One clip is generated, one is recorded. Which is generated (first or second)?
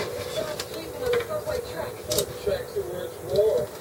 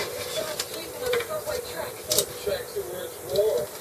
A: second